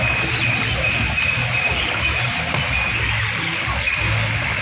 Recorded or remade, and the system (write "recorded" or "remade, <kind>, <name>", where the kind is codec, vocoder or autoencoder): recorded